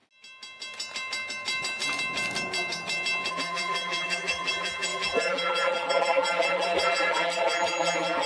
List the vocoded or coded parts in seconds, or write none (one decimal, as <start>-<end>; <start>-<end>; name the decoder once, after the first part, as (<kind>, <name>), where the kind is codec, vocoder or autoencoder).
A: 3.3-8.3 (vocoder, BigVGAN v2)